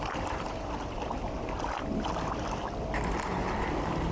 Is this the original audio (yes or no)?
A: yes